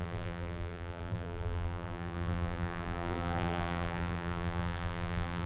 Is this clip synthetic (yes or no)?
yes